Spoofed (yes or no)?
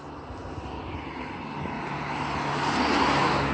no